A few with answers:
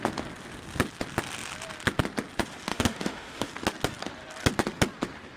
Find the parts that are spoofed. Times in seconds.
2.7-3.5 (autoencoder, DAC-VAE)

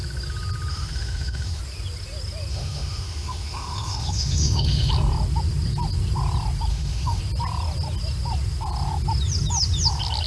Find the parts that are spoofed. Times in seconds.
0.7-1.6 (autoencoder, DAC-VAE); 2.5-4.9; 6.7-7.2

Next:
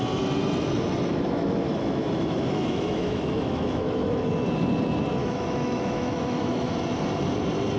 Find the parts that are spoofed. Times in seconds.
1.1-4.3 (autoencoder, DAC-VAE); 5.2-6.7